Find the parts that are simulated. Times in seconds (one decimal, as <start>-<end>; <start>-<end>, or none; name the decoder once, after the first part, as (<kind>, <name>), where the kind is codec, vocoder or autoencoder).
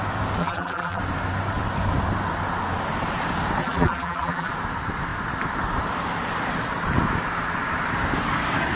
0.4-1.0 (vocoder, BigVGAN v2); 3.6-4.5